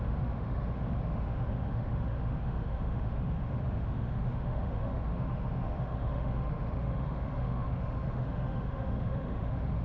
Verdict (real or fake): fake